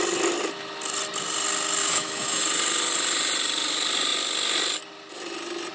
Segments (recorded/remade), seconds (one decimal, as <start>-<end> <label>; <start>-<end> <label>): 0.0-1.8 recorded; 1.8-2.4 remade; 2.4-5.7 recorded